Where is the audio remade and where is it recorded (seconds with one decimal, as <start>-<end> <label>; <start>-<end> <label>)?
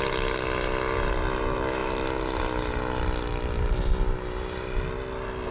0.0-5.5 recorded